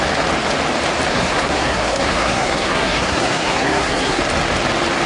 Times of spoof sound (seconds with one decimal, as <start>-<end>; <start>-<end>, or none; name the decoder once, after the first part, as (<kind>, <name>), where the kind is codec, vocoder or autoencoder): 1.1-4.2 (codec, SNAC)